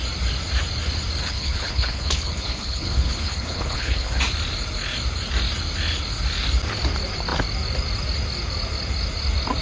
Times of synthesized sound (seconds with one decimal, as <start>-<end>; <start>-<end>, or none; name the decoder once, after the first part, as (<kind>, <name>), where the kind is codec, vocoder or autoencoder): 1.2-4.2 (codec, HILCodec)